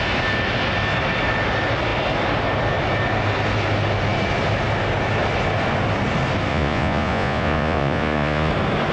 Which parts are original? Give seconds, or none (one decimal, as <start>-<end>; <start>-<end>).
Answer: 0.0-6.5; 8.5-8.9